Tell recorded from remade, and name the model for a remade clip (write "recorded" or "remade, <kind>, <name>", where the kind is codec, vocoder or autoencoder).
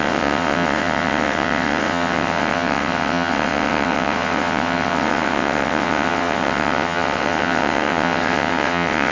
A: remade, vocoder, WaveNeXt